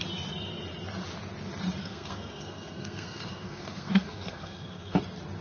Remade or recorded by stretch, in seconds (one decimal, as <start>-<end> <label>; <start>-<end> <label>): 0.0-1.8 recorded; 1.8-5.0 remade; 5.0-5.4 recorded